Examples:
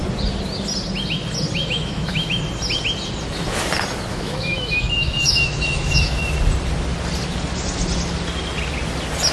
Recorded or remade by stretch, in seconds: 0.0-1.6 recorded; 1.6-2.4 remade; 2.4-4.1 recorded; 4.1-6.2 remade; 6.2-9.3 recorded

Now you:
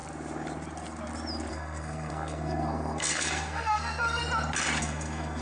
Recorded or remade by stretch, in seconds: 0.0-1.5 recorded; 1.5-4.2 remade; 4.2-4.8 recorded; 4.8-5.4 remade

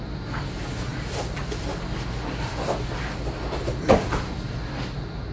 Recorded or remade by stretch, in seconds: 0.0-5.3 recorded

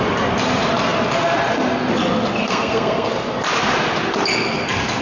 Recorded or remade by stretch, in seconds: 0.0-2.4 recorded; 2.4-3.1 remade; 3.1-5.0 recorded

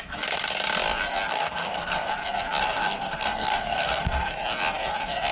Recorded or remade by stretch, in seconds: 0.0-1.3 recorded; 1.3-2.1 remade; 2.1-2.6 recorded; 2.6-4.3 remade; 4.3-5.3 recorded

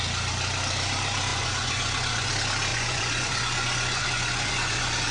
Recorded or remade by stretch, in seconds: 0.0-1.3 recorded; 1.3-2.3 remade; 2.3-2.7 recorded; 2.7-5.1 remade

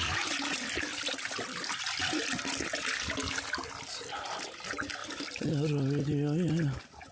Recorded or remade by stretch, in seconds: 0.0-7.1 recorded

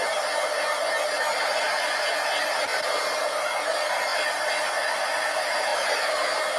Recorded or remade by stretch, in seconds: 0.0-6.6 recorded